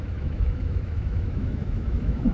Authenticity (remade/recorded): remade